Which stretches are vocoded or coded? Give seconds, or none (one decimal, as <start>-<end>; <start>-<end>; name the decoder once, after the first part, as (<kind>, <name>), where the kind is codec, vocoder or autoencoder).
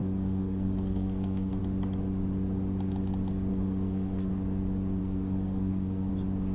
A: 0.0-1.6 (codec, SNAC); 3.5-4.3; 5.0-6.1